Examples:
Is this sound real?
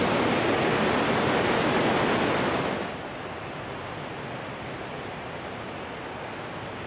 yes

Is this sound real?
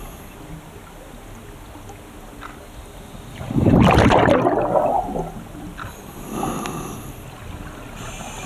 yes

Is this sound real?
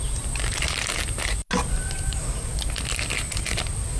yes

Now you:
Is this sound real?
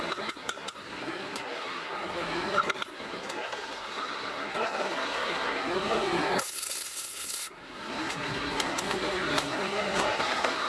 no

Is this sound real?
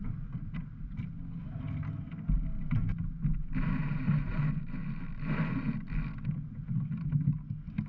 yes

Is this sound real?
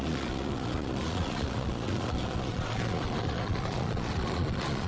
no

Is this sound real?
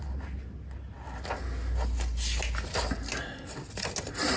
yes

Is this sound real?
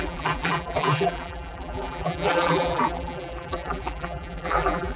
no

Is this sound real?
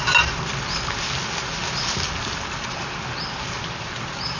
yes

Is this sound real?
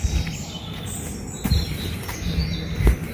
yes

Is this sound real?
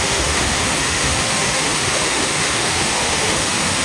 no